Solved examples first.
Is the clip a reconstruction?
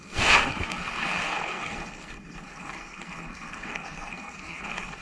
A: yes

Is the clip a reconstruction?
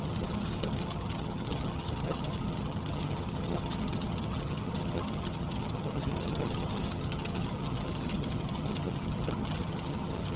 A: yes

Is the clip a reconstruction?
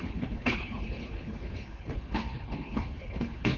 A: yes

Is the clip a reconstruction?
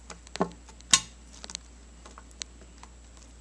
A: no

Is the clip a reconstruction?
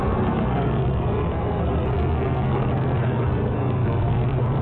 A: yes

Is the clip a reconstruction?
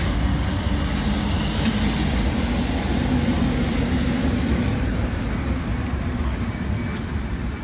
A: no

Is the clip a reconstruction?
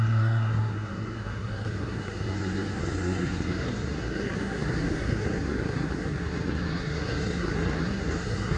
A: yes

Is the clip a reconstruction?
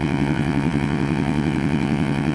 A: yes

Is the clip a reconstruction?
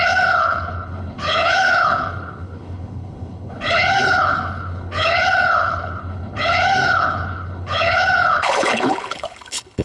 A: yes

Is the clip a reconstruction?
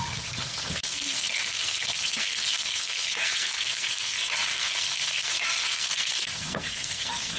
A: yes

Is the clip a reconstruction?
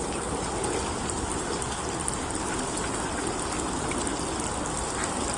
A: no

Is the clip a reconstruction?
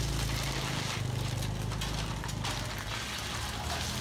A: no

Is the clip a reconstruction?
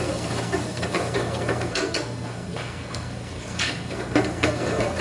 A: yes